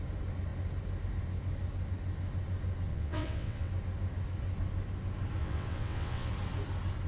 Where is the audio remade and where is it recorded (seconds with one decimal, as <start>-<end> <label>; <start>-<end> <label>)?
0.0-2.9 recorded; 2.9-3.7 remade; 3.7-5.4 recorded; 5.4-6.3 remade; 6.3-7.1 recorded